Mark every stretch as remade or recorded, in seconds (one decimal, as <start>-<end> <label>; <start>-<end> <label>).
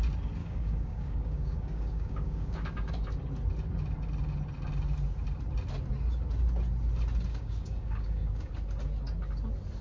0.0-0.4 recorded; 0.4-2.9 remade; 2.9-7.3 recorded; 7.3-8.5 remade; 8.5-9.8 recorded